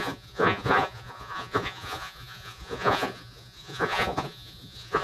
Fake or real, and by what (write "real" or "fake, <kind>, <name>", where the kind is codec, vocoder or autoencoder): fake, vocoder, Vocos